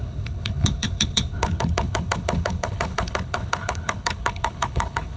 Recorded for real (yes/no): no